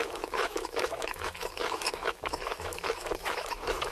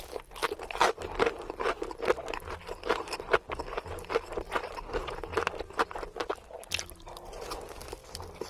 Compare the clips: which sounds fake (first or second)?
first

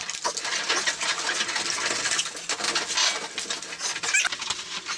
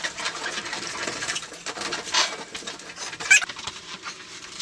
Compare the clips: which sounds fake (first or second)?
second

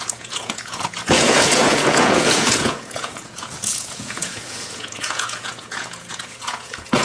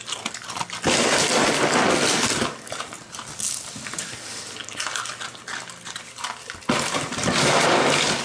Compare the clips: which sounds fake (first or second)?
first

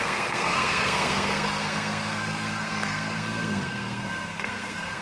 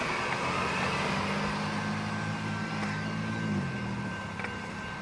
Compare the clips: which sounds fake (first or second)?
first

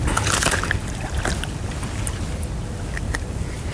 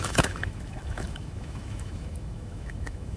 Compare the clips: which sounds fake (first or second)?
second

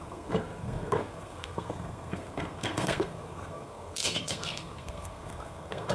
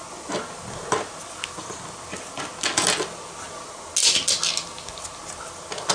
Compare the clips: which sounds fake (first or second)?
first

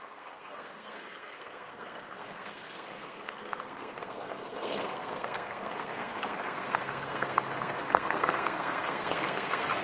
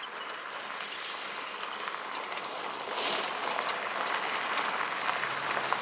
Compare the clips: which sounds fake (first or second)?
first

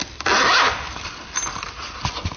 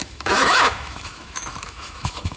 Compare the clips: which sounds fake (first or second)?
second